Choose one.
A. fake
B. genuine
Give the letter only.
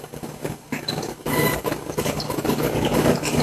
A